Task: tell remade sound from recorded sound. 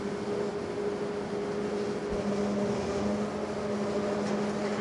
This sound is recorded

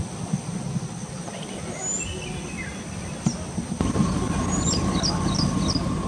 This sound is recorded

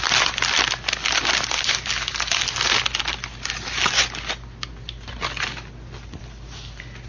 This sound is recorded